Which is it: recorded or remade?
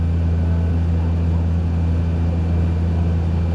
recorded